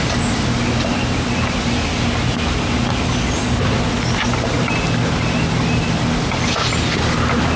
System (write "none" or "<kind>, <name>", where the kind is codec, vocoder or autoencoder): none